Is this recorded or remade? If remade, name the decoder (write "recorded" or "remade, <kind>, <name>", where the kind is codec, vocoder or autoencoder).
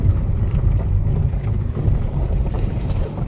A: remade, vocoder, BigVGAN v2